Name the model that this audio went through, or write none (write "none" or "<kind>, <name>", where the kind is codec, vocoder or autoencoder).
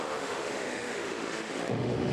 autoencoder, DAC-VAE